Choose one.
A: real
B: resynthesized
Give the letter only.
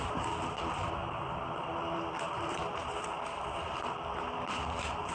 B